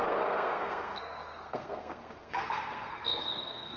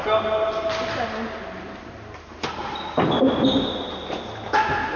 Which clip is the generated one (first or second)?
first